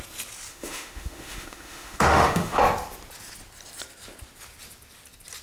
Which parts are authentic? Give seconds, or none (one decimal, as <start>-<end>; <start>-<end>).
0.0-0.5; 2.6-5.4